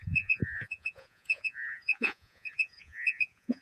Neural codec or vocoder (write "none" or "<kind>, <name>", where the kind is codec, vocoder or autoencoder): vocoder, Vocos